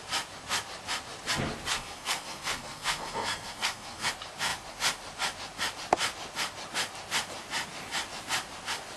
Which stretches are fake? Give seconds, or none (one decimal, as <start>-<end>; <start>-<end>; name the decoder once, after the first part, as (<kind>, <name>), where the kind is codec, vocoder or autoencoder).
1.7-4.1 (codec, SNAC)